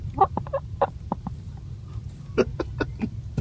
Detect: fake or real real